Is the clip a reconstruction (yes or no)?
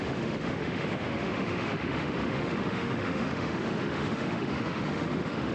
yes